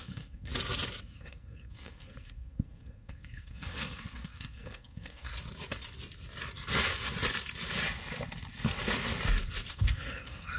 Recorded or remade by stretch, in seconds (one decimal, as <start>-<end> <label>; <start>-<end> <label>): 0.0-0.5 remade; 0.5-1.0 recorded; 1.0-5.3 remade; 5.3-9.7 recorded; 9.7-10.6 remade